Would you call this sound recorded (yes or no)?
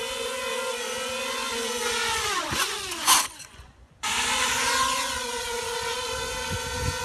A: no